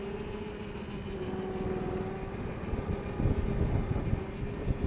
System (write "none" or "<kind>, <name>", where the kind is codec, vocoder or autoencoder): none